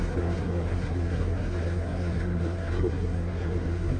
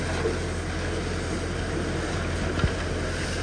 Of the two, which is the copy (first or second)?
first